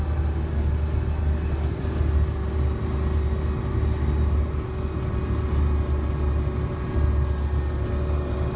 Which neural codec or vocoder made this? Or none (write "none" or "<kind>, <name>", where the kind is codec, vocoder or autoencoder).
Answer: none